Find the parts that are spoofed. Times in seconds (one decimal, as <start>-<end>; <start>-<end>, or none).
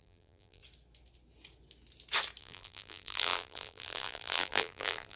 0.0-0.6; 2.4-5.2